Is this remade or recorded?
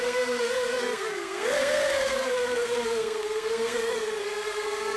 remade